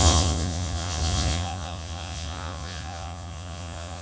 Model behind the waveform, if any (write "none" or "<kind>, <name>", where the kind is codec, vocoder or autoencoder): vocoder, Vocos